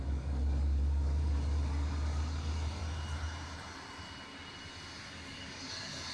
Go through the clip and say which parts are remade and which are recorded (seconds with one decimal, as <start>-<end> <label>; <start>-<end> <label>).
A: 0.0-2.8 remade; 2.8-5.1 recorded; 5.1-6.1 remade